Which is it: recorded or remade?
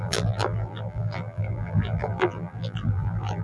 remade